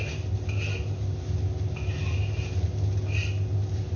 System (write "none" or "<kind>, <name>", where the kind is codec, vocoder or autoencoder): none